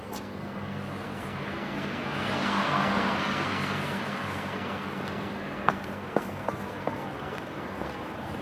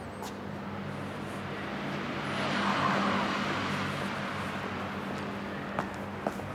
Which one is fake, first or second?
first